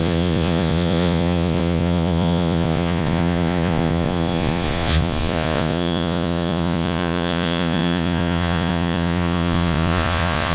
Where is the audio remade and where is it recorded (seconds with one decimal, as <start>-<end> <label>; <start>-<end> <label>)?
0.0-10.5 remade